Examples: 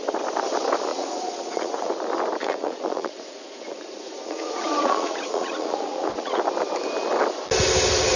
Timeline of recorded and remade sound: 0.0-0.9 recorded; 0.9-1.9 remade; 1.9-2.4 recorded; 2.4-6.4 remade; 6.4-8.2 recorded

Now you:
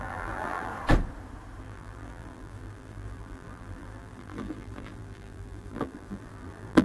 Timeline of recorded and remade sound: 0.0-0.7 remade; 0.7-1.6 recorded; 1.6-6.8 remade

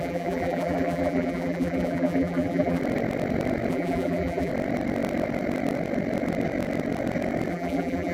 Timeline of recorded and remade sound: 0.0-2.8 remade; 2.8-3.7 recorded; 3.7-4.5 remade; 4.5-7.5 recorded; 7.5-8.1 remade

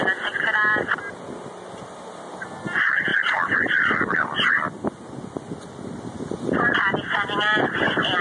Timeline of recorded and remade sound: 0.0-8.2 recorded